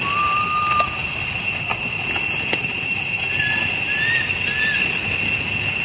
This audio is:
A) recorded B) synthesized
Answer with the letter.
A